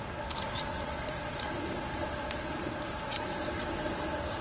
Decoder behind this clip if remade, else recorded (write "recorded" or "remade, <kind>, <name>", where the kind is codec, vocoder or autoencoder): recorded